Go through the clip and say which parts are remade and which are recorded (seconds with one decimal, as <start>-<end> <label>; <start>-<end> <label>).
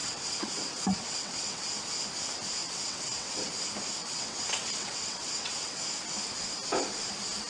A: 0.0-1.8 remade; 1.8-2.6 recorded; 2.6-3.5 remade; 3.5-4.0 recorded; 4.0-5.8 remade; 5.8-7.5 recorded